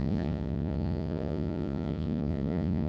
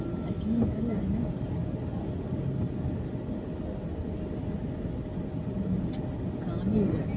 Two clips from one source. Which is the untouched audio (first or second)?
second